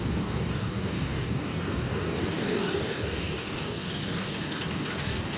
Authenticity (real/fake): fake